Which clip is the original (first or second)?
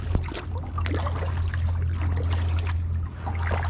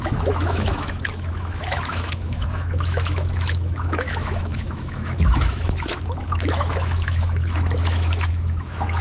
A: first